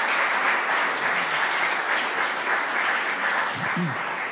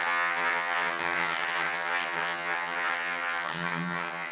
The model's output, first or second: second